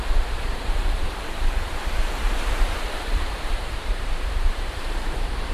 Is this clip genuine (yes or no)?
no